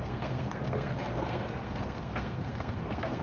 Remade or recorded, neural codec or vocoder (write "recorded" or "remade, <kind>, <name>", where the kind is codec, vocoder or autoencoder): remade, codec, SNAC